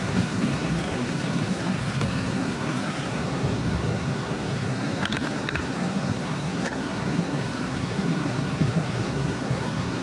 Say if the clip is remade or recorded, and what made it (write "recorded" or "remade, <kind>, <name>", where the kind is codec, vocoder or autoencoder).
remade, codec, SNAC